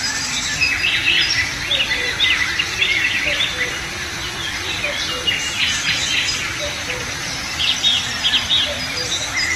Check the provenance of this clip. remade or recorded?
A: recorded